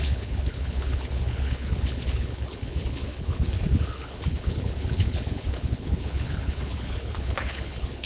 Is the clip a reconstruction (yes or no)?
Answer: yes